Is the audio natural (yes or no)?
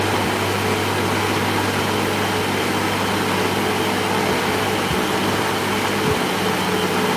yes